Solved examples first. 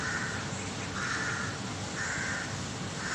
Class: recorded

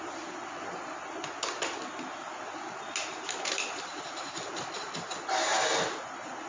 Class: recorded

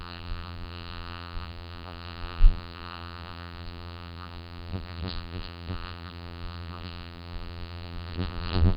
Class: remade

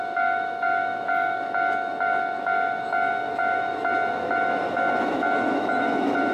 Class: remade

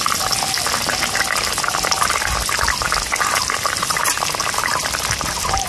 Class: recorded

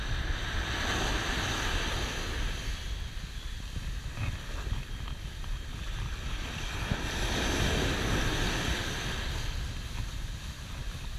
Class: recorded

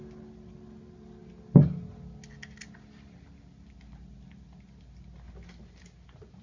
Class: recorded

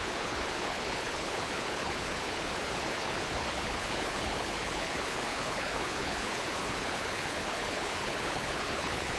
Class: remade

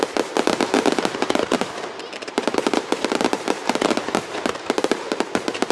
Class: remade